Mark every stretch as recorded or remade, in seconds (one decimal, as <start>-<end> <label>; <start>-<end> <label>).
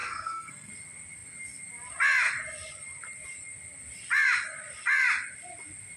0.0-0.7 remade; 0.7-6.0 recorded